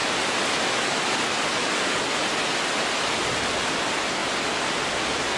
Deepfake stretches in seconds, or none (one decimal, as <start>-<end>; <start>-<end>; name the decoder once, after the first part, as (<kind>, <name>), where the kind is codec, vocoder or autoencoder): none